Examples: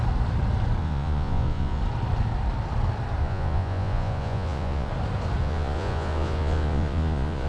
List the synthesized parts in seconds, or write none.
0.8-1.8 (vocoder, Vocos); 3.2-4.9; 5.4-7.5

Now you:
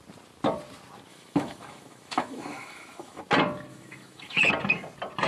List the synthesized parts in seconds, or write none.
1.1-3.2 (autoencoder, DAC-VAE); 3.7-4.5

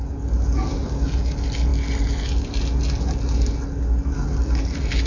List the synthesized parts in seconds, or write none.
none

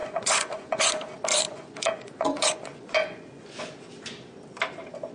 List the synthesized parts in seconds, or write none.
0.0-0.9 (vocoder, Vocos); 1.3-3.6

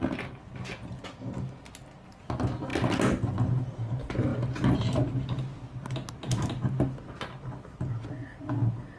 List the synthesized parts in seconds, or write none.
none